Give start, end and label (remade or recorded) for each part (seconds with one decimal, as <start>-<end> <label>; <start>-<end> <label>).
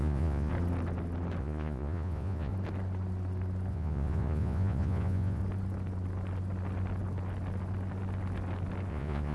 0.0-0.5 remade; 0.5-1.4 recorded; 1.4-2.5 remade; 2.5-3.7 recorded; 3.7-5.4 remade; 5.4-8.9 recorded; 8.9-9.3 remade